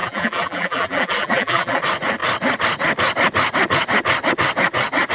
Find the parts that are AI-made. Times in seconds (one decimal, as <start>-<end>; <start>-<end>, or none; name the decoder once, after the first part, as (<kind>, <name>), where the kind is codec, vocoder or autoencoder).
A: 0.0-1.8 (vocoder, BigVGAN v2)